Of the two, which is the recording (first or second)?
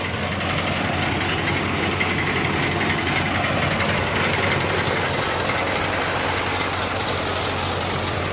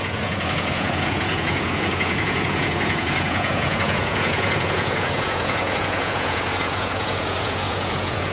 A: first